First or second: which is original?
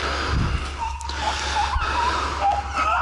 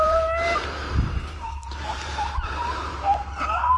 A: first